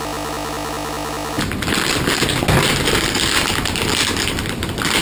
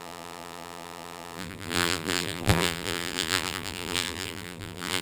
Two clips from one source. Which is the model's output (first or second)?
second